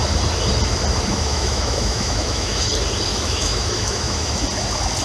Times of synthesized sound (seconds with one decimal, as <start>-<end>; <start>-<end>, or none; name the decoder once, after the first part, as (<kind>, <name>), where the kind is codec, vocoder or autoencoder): 1.1-2.7 (autoencoder, DAC-VAE); 3.1-4.3